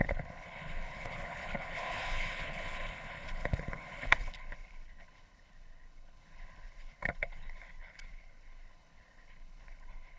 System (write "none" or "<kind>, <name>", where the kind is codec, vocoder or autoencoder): codec, HILCodec